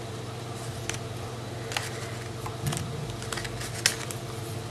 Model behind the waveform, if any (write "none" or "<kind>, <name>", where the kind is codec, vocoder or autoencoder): none